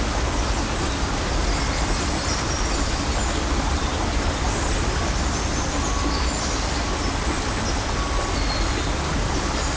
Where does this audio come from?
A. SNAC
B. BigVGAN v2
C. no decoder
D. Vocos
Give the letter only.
C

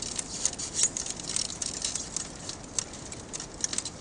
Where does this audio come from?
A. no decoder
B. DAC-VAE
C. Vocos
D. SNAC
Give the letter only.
A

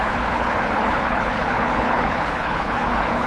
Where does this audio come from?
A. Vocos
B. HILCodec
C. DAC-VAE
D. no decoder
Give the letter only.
B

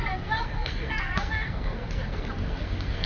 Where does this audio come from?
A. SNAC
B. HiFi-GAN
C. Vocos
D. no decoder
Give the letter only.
A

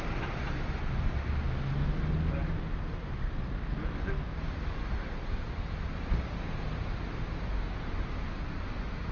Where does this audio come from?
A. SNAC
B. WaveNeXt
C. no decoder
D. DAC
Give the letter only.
C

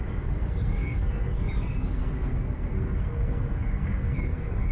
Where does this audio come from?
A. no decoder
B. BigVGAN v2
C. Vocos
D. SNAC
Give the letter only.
D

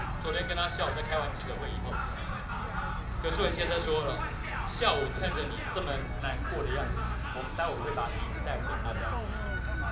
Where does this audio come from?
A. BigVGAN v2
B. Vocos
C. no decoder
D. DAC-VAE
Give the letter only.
C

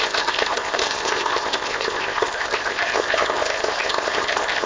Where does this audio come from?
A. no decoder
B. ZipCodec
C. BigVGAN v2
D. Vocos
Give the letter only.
B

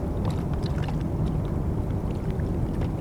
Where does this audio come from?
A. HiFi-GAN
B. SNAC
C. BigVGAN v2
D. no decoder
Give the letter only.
D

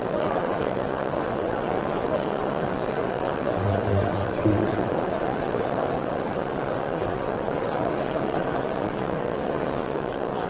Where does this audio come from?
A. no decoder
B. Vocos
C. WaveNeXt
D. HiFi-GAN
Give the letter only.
C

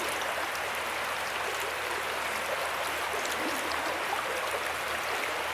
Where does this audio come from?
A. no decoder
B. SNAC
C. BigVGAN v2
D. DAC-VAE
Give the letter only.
A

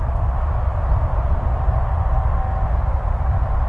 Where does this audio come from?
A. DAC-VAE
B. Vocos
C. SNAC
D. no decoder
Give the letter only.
D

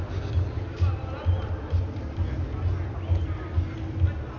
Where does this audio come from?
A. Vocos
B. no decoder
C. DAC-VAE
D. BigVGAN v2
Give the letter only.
B